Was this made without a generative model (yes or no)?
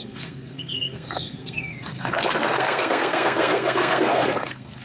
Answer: no